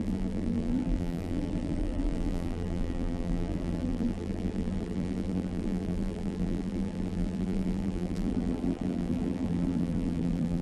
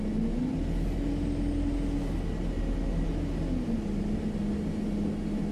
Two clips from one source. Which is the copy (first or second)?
first